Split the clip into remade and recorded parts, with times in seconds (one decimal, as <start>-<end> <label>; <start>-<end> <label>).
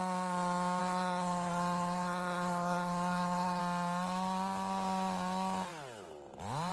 0.0-0.8 recorded; 0.8-3.6 remade; 3.6-6.7 recorded